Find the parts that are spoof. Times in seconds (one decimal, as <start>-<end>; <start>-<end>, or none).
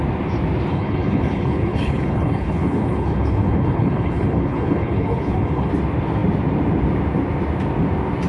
0.7-5.7